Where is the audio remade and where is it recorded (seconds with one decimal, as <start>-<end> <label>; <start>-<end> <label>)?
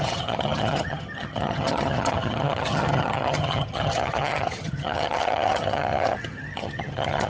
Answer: 0.0-7.3 remade